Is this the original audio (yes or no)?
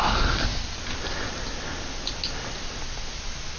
yes